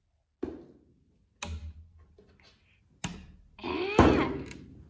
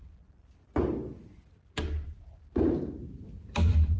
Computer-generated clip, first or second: second